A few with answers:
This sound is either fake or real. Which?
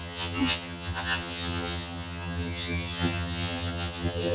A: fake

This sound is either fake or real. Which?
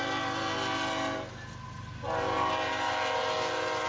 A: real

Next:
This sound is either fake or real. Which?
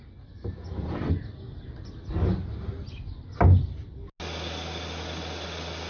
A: real